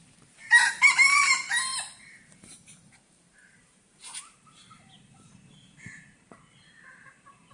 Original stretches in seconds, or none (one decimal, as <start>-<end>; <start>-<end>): none

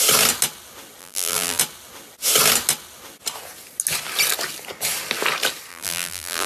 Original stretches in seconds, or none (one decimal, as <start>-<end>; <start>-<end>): 0.0-1.0; 1.6-5.7